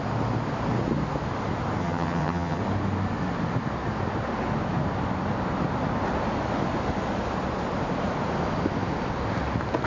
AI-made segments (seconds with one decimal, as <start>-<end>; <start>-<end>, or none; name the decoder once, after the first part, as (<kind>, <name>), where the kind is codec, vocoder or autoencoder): 1.8-2.6 (vocoder, HiFi-GAN)